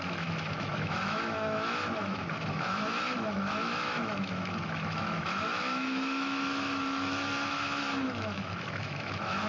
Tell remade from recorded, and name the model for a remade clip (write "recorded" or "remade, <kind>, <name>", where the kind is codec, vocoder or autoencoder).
remade, autoencoder, DAC-VAE